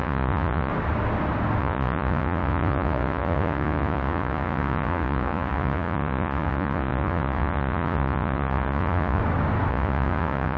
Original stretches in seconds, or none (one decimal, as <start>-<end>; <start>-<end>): 0.7-1.6; 9.2-9.7